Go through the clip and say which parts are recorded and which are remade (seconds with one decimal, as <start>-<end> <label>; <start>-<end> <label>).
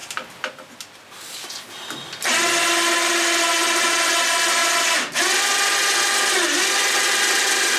0.0-7.8 recorded